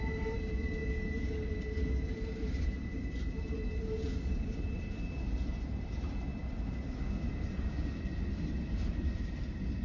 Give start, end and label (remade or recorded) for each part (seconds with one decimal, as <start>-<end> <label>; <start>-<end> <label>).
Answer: 0.0-9.8 recorded